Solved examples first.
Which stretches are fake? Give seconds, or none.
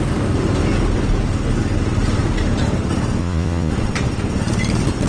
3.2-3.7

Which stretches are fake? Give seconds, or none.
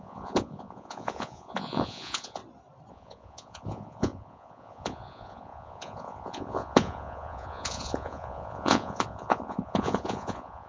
0.0-2.4; 2.9-10.7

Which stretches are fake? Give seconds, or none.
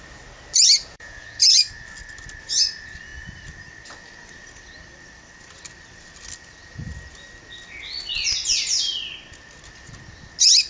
0.9-1.6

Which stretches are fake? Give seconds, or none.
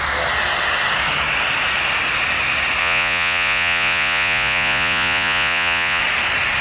2.8-6.0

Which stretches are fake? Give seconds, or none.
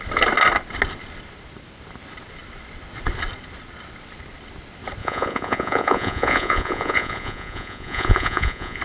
5.0-8.8